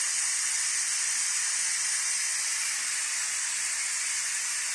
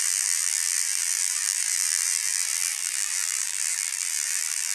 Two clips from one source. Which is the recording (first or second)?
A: first